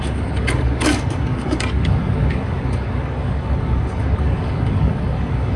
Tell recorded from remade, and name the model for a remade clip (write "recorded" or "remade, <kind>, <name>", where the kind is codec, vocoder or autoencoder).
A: remade, codec, DAC